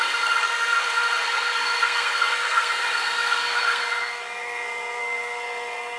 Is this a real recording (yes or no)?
no